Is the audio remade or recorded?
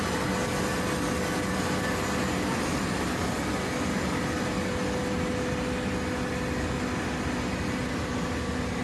recorded